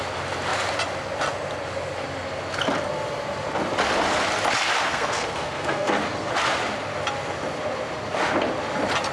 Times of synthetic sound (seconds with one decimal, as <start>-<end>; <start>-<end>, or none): 4.9-6.3